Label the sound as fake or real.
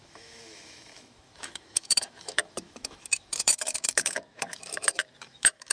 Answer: fake